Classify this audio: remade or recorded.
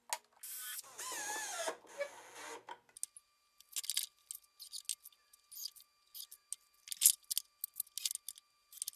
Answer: recorded